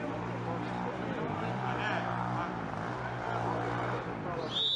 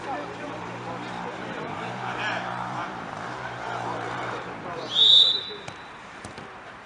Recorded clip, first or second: first